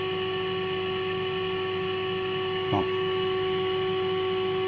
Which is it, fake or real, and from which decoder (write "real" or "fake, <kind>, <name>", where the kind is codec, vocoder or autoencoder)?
real